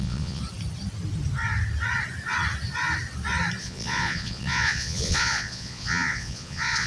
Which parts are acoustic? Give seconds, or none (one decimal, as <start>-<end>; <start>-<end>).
0.4-3.6